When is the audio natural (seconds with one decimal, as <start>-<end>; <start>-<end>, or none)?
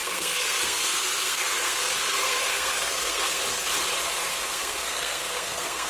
3.4-4.3